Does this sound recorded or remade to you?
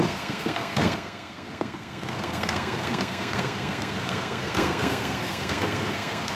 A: remade